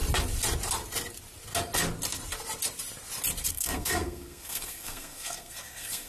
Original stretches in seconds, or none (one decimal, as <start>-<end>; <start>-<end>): 0.0-3.5